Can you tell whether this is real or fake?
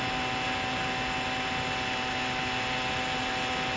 real